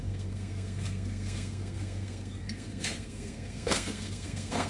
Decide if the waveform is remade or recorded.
remade